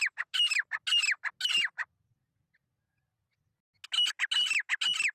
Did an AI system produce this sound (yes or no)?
no